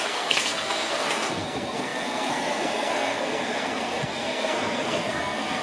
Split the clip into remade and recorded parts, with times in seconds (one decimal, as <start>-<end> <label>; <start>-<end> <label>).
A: 0.0-5.6 remade